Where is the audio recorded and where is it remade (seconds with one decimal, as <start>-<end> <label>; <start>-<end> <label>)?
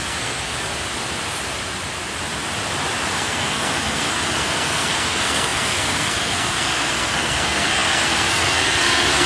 0.0-0.5 remade; 0.5-3.1 recorded; 3.1-9.3 remade